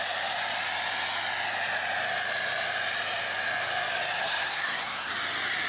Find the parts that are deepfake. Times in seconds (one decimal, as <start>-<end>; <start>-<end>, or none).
4.2-5.1